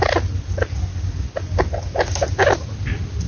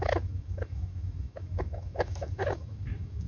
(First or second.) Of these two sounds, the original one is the first